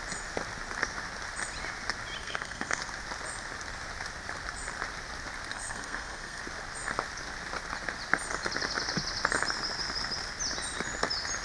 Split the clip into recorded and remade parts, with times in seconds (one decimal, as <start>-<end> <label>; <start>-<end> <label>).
0.0-2.2 recorded; 2.2-2.8 remade; 2.8-5.5 recorded; 5.5-6.4 remade; 6.4-11.4 recorded